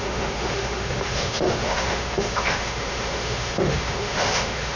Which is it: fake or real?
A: fake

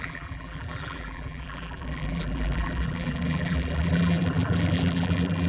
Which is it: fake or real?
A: fake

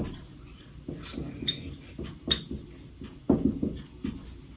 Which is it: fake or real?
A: real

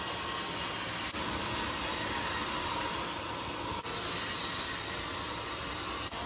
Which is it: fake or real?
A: real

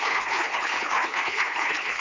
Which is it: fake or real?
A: fake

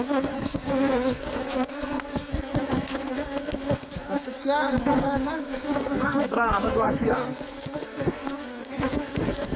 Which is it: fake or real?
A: fake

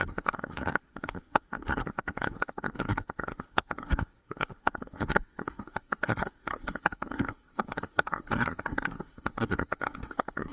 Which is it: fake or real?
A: fake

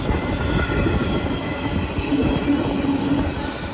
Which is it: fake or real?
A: real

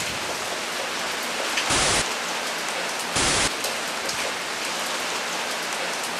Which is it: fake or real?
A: real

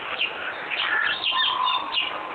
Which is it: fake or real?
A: real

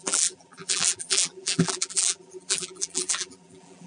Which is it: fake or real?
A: fake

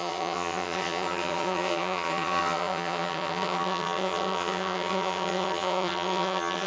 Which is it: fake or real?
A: fake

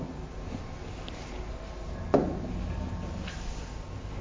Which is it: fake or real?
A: real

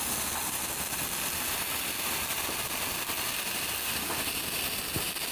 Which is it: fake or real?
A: real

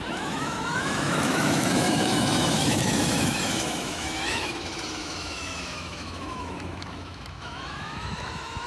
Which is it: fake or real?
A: fake